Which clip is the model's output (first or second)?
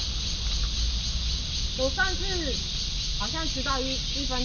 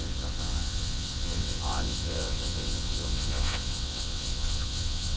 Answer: second